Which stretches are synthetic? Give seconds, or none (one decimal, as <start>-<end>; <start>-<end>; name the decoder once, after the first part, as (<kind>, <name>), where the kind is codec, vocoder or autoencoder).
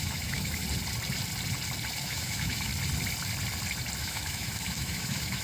0.0-0.6 (autoencoder, DAC-VAE); 2.0-2.7; 4.0-5.4